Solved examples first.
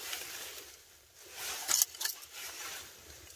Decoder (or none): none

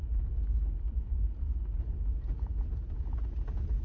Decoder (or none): none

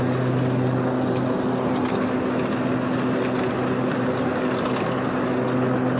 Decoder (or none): none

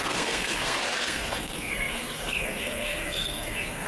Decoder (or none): codec, SNAC